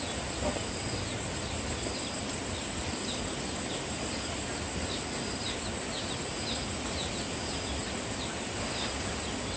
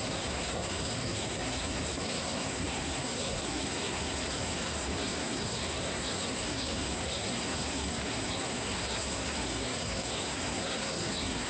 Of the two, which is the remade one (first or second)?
second